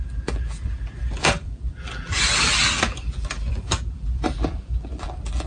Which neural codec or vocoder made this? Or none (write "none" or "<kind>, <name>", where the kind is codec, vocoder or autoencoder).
vocoder, BigVGAN v2